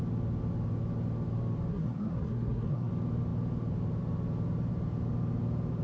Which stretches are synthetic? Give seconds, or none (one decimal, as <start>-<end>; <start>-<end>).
1.7-2.9